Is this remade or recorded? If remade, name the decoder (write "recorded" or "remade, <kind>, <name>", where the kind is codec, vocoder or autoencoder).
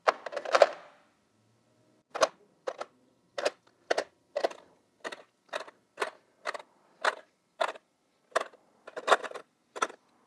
recorded